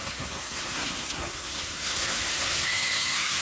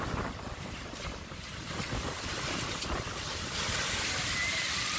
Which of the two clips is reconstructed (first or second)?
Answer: first